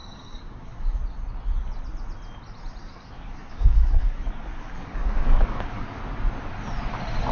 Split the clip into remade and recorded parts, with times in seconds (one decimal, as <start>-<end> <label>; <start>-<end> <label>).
0.0-1.0 remade; 1.0-2.8 recorded; 2.8-6.0 remade; 6.0-7.3 recorded